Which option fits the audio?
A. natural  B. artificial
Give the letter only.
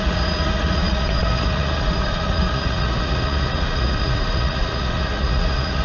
B